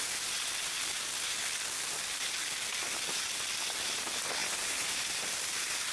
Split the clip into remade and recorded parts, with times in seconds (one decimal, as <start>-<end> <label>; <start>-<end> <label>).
0.0-5.9 recorded